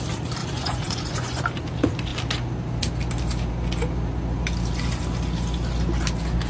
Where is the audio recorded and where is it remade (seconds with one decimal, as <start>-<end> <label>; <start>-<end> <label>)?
0.0-0.4 recorded; 0.4-1.4 remade; 1.4-6.5 recorded